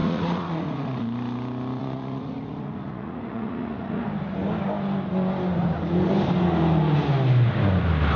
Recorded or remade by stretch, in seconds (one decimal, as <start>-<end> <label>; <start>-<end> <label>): 0.0-1.0 remade; 1.0-1.8 recorded; 1.8-4.0 remade; 4.0-8.2 recorded